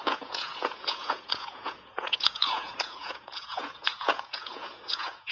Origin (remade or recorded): remade